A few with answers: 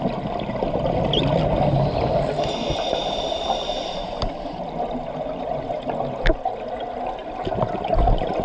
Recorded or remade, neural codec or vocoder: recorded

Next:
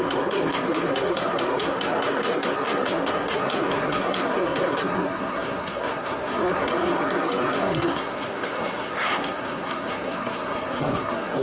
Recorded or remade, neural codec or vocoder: remade, codec, SNAC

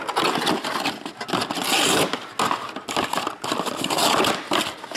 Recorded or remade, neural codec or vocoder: recorded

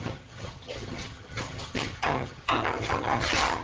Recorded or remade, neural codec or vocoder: remade, vocoder, HiFi-GAN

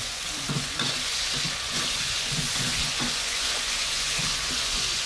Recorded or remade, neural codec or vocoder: remade, vocoder, Vocos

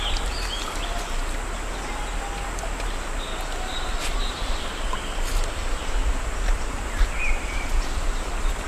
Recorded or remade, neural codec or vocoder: recorded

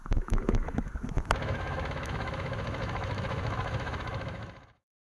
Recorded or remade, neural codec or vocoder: remade, autoencoder, DAC-VAE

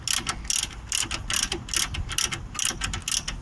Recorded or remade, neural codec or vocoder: recorded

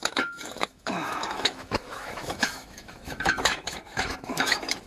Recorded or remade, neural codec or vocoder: remade, autoencoder, DAC-VAE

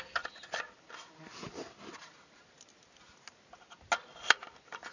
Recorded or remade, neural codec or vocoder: recorded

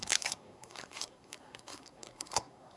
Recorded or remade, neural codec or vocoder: remade, codec, SNAC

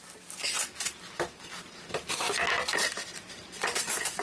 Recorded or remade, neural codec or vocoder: recorded